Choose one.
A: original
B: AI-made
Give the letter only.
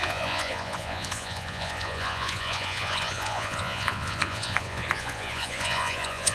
B